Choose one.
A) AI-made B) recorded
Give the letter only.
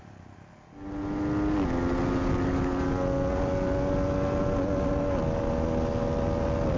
B